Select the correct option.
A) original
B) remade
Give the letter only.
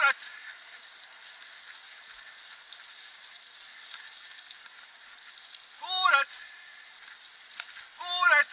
A